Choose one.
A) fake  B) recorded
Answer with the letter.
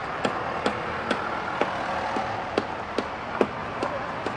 B